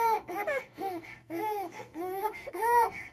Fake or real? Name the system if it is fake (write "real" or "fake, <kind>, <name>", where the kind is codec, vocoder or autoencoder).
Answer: fake, codec, SNAC